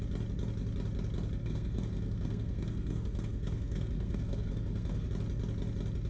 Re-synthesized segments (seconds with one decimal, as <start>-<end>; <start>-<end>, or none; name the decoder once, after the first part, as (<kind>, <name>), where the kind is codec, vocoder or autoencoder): 1.4-5.1 (codec, SNAC)